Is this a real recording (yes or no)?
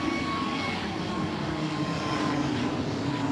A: no